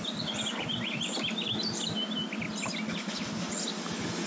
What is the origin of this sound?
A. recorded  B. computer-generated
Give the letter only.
A